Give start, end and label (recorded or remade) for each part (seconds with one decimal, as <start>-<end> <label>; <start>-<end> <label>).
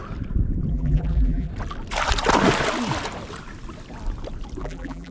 0.0-0.7 recorded; 0.7-1.5 remade; 1.5-4.6 recorded; 4.6-5.1 remade